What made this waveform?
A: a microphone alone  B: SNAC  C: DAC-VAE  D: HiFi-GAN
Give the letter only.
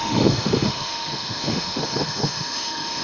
C